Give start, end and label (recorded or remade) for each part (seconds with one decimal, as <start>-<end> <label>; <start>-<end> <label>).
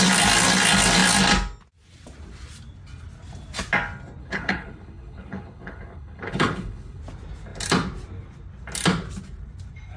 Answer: 0.0-4.2 recorded; 4.2-7.0 remade; 7.0-10.0 recorded